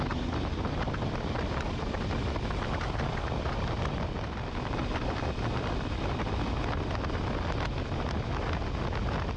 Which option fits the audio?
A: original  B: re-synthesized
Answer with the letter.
A